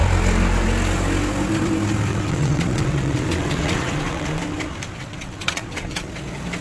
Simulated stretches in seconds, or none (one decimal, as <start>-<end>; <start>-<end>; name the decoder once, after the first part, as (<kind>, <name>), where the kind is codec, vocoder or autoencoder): 2.1-4.4 (vocoder, WaveNeXt); 5.0-6.1

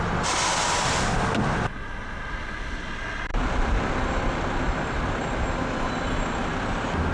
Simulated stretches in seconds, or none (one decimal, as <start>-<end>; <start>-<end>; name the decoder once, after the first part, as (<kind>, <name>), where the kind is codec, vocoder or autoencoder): none

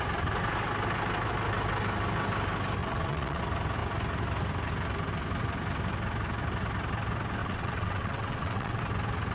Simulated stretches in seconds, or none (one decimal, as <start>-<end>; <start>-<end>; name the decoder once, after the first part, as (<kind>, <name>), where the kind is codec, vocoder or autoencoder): 2.8-3.4 (vocoder, WaveNeXt); 7.4-8.8

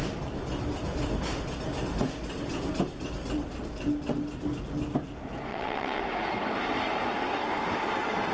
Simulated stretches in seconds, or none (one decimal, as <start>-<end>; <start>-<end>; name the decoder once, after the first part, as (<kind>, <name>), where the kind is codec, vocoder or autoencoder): 5.5-6.0 (vocoder, WaveNeXt)